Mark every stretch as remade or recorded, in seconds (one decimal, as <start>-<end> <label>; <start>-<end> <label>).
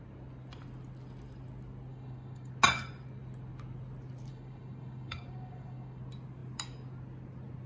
0.0-1.9 recorded; 1.9-2.5 remade; 2.5-4.3 recorded; 4.3-6.0 remade; 6.0-7.7 recorded